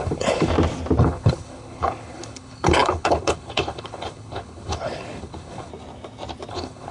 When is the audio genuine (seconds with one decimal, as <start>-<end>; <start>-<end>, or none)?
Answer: 0.5-1.0; 5.7-6.5